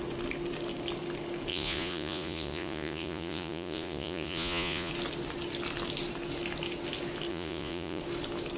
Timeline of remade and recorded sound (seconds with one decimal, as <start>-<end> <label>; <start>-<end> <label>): 0.0-1.5 recorded; 1.5-4.9 remade; 4.9-7.3 recorded; 7.3-8.0 remade; 8.0-8.6 recorded